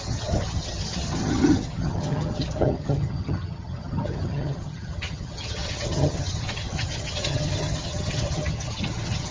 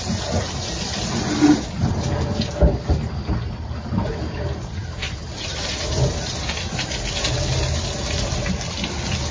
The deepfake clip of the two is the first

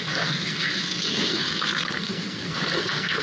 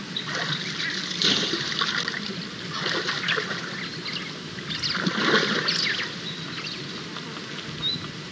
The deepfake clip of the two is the first